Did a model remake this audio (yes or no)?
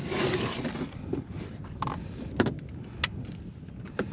no